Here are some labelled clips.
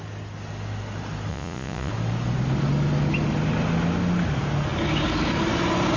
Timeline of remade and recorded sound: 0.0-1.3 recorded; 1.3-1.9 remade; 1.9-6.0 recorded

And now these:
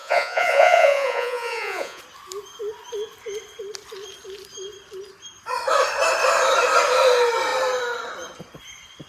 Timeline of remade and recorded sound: 0.0-2.0 remade; 2.0-9.1 recorded

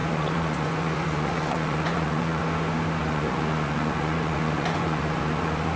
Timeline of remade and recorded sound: 0.0-2.4 remade; 2.4-3.0 recorded; 3.0-5.8 remade

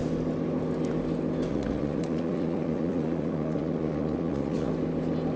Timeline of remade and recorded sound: 0.0-1.5 recorded; 1.5-4.7 remade; 4.7-5.4 recorded

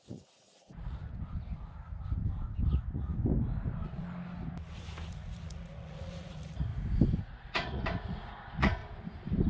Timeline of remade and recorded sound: 0.0-1.0 remade; 1.0-2.7 recorded; 2.7-3.1 remade; 3.1-5.1 recorded; 5.1-6.7 remade; 6.7-7.2 recorded; 7.2-8.8 remade; 8.8-9.5 recorded

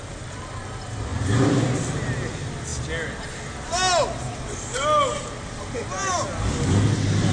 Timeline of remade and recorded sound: 0.0-7.3 recorded

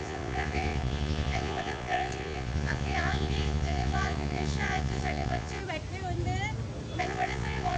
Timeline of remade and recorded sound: 0.0-5.6 remade; 5.6-7.0 recorded; 7.0-7.8 remade